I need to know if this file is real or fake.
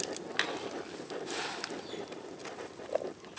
real